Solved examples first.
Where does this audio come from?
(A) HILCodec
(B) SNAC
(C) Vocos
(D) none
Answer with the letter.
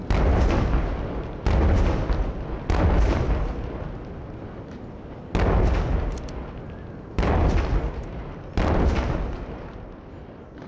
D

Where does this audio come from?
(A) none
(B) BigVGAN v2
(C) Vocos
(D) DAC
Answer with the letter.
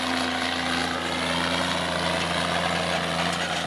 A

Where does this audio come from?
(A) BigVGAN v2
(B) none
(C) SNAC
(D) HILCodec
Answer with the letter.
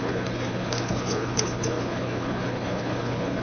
D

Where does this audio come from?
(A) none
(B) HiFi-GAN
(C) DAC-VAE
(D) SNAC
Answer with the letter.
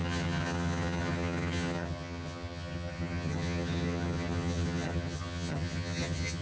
B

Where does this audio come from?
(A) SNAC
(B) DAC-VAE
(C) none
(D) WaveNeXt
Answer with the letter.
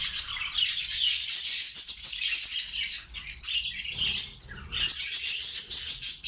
C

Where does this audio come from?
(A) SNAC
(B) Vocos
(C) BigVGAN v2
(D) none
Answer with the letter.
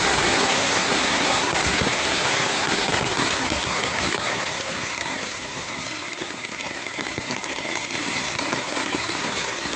A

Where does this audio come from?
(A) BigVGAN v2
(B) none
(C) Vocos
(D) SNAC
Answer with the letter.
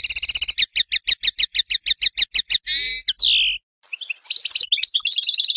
B